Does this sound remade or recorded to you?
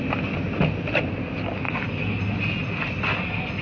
recorded